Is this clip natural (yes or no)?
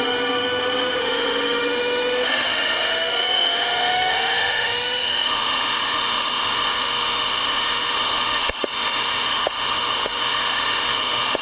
no